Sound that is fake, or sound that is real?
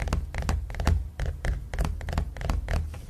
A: real